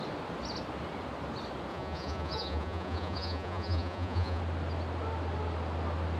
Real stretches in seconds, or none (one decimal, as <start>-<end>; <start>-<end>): 0.0-1.7; 4.4-6.2